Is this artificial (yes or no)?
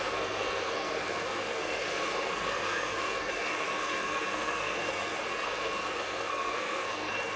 yes